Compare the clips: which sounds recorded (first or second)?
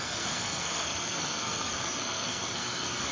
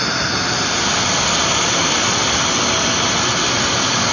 second